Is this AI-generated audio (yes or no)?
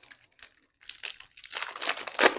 no